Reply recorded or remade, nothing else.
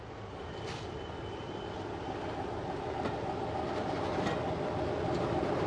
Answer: recorded